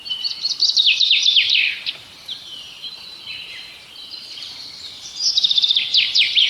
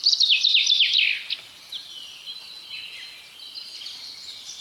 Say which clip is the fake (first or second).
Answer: first